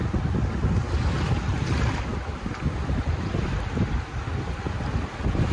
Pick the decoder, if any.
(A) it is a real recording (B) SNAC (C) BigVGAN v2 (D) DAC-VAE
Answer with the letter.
A